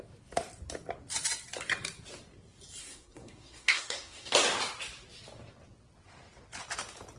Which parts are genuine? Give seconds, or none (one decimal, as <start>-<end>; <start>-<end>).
0.0-2.8; 4.3-7.2